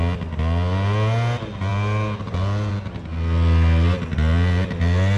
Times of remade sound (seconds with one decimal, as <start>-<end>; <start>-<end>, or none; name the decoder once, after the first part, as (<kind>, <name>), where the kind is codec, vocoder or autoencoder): none

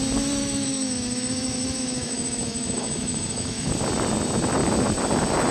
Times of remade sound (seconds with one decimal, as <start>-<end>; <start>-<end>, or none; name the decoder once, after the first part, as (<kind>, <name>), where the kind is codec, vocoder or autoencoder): 0.4-3.7 (autoencoder, DAC-VAE)